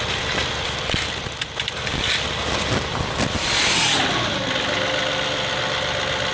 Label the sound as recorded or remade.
recorded